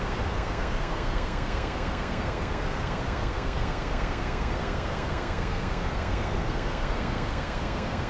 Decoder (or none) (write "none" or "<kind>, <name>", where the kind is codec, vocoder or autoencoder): codec, SNAC